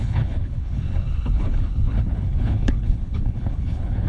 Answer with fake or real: fake